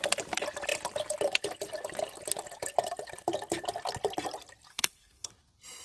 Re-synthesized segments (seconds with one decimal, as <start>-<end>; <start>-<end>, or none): 4.7-5.3